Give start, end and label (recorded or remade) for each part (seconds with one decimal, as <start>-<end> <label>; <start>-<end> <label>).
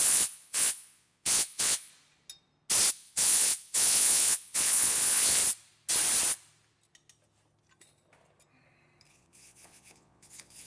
0.0-1.9 remade; 1.9-2.9 recorded; 2.9-5.4 remade; 5.4-9.1 recorded; 9.1-10.7 remade